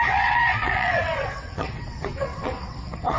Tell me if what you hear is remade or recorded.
remade